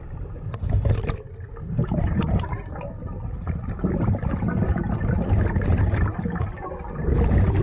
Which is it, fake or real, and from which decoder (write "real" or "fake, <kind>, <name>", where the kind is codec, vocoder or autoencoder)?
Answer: real